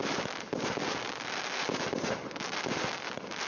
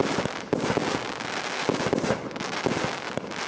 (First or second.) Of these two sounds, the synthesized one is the first